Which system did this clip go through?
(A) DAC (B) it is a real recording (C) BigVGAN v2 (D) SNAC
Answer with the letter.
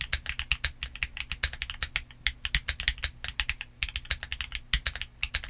B